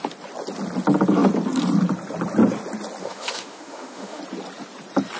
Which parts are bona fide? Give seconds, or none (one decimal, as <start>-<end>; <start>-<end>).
0.0-3.0; 4.2-5.2